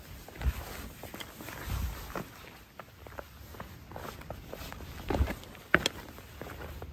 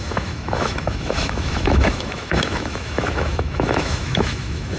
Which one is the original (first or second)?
first